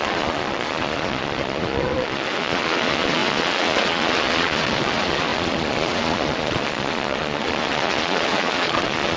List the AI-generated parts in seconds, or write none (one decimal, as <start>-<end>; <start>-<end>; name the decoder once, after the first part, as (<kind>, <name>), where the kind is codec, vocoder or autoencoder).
0.0-9.2 (vocoder, Vocos)